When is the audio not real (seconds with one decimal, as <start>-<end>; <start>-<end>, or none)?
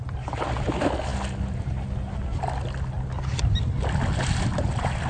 none